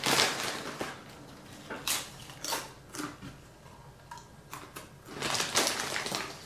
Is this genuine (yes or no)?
yes